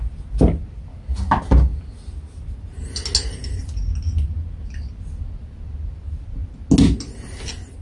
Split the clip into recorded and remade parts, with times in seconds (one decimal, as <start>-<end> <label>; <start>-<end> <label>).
0.0-7.8 recorded